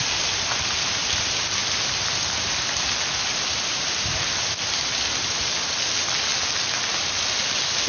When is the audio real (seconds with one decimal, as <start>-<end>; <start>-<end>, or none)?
0.0-1.6; 5.5-7.9